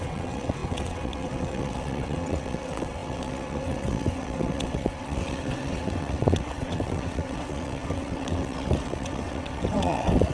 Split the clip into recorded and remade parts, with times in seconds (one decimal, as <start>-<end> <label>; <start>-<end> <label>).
0.0-10.3 remade